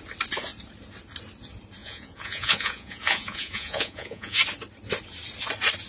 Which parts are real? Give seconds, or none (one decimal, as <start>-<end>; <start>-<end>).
0.0-1.8; 4.4-5.9